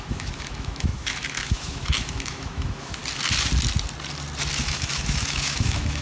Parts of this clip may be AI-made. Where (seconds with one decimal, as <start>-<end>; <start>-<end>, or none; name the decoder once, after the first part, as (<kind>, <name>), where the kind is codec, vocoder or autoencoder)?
0.0-3.0 (autoencoder, DAC-VAE); 4.6-6.0